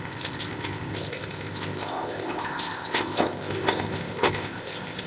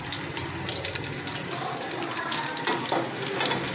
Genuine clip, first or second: second